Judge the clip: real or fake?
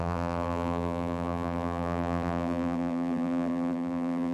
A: fake